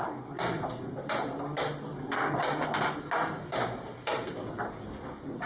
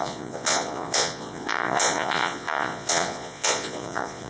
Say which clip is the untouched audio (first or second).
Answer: first